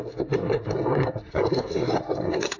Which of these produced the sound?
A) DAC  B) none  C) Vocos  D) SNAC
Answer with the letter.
D